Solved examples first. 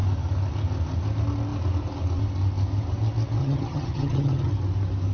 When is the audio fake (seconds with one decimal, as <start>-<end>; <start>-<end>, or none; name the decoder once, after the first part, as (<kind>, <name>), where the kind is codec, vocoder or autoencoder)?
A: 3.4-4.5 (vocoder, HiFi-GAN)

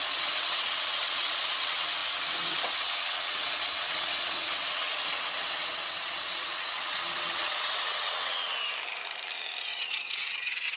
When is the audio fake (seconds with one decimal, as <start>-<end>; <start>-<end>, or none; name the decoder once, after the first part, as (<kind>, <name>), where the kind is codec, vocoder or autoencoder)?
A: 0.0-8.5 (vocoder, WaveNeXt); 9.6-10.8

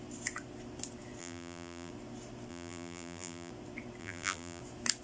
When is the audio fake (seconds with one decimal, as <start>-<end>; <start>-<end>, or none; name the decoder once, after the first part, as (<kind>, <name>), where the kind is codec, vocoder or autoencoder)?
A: 1.2-1.9 (vocoder, BigVGAN v2); 2.5-3.5; 4.0-4.6

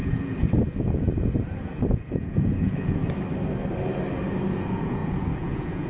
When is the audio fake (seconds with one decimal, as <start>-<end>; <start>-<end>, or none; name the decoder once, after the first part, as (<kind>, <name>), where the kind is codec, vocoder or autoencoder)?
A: 0.0-3.0 (vocoder, Vocos); 4.5-5.9

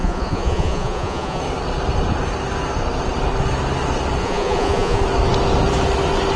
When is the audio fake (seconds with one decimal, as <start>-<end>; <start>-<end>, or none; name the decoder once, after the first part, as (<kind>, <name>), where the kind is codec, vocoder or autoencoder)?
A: 0.0-1.4 (vocoder, Vocos); 4.2-5.0

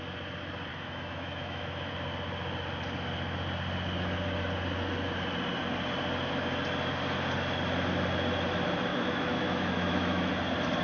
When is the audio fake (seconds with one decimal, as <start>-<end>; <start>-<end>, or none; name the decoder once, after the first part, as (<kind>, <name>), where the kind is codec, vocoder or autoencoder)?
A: 0.7-1.9 (autoencoder, DAC-VAE); 8.9-10.3